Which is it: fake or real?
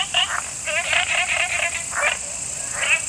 real